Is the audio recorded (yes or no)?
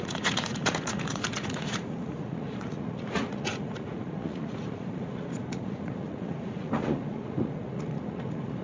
no